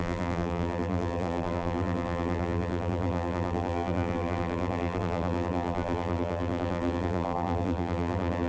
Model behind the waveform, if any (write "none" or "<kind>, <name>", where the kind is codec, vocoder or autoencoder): vocoder, BigVGAN v2